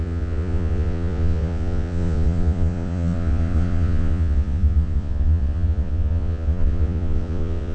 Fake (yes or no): yes